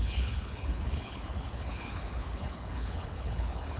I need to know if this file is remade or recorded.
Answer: remade